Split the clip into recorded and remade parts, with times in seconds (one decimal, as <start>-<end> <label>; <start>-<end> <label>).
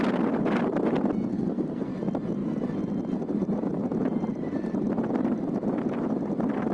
0.0-1.3 recorded; 1.3-1.9 remade; 1.9-6.7 recorded